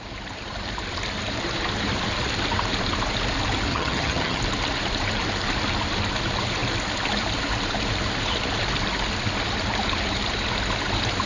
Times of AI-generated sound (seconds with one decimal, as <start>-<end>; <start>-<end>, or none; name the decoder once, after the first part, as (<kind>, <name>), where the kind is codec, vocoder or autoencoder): 3.7-4.4 (vocoder, HiFi-GAN)